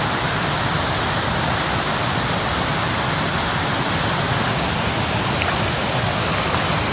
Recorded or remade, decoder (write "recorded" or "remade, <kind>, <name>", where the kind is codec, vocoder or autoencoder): recorded